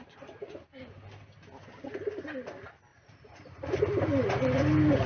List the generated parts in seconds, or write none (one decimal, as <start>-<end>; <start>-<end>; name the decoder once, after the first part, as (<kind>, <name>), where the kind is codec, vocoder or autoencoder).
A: 2.9-3.8 (vocoder, Vocos)